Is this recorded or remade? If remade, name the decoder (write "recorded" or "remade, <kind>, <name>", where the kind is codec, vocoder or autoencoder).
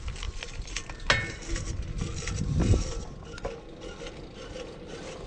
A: recorded